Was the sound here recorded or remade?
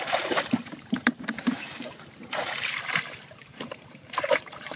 remade